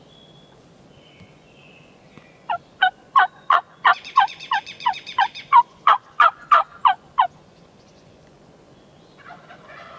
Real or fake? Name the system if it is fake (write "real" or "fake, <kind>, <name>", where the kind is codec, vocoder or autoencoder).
fake, vocoder, Vocos